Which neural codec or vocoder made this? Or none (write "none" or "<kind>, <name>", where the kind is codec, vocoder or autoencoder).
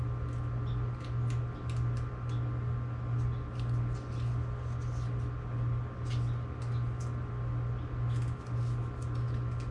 none